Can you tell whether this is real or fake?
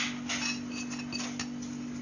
real